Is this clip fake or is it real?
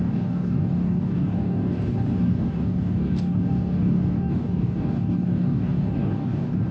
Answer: fake